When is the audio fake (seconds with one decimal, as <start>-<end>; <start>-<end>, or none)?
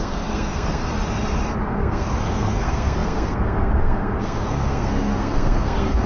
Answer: 0.0-0.8; 1.6-6.1